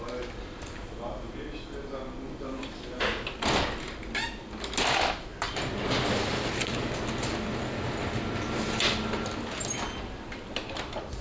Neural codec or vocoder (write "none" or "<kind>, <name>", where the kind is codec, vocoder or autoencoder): none